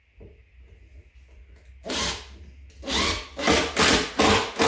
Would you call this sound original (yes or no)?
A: yes